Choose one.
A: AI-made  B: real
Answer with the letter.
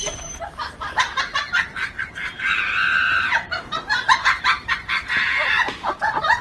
A